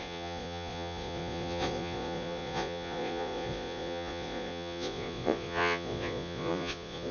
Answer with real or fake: fake